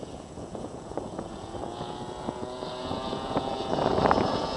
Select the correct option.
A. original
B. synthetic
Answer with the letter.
B